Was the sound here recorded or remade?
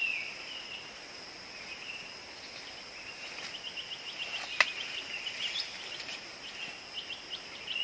recorded